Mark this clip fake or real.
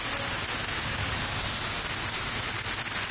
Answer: real